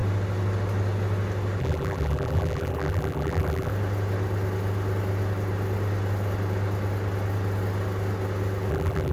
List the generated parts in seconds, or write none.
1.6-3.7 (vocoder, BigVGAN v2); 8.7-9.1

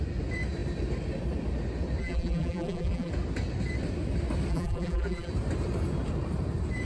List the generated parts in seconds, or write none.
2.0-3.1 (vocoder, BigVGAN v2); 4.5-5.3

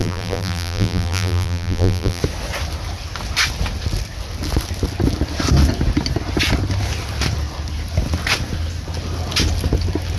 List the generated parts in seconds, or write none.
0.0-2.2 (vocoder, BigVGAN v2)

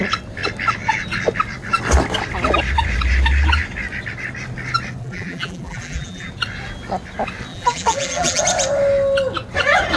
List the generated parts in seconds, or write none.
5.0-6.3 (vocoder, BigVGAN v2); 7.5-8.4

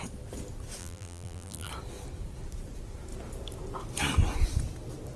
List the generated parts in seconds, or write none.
0.8-1.7 (vocoder, BigVGAN v2)

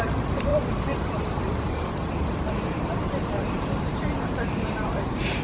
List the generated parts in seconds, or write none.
0.0-5.4 (vocoder, BigVGAN v2)

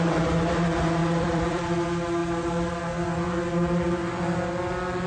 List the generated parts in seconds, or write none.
1.0-1.7 (vocoder, BigVGAN v2)

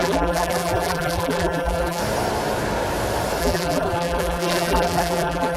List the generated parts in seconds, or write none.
0.0-2.0 (vocoder, BigVGAN v2); 3.4-5.6